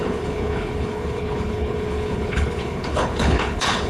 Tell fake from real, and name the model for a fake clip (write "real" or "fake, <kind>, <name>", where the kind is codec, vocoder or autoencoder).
fake, codec, HILCodec